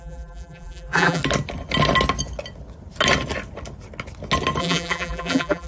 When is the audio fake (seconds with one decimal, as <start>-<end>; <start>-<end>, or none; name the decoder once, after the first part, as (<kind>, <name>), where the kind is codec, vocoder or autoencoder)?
0.0-1.2 (vocoder, BigVGAN v2); 4.6-5.7